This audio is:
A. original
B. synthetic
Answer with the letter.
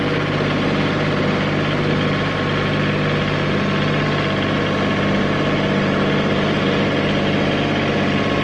A